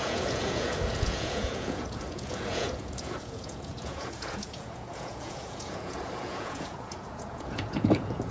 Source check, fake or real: fake